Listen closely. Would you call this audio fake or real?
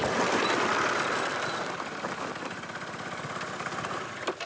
real